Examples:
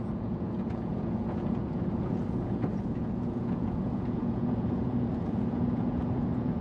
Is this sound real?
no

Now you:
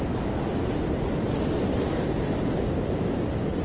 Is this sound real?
yes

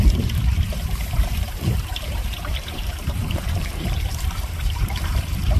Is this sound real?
no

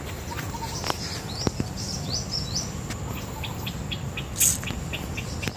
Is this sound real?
yes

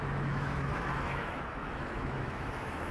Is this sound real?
no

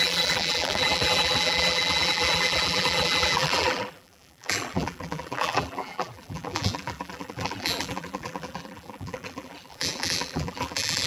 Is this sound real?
no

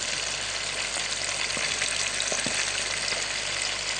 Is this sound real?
yes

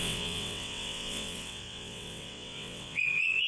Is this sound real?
no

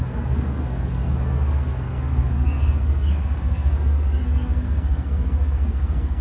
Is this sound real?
no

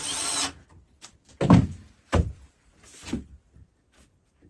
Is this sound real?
yes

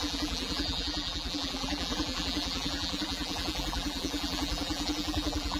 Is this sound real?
no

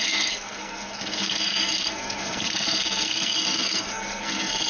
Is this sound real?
no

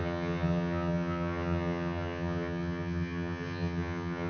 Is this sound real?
no